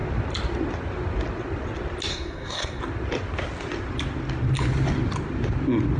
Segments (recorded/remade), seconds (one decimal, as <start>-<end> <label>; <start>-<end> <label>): 0.0-2.1 recorded; 2.1-2.8 remade; 2.8-6.0 recorded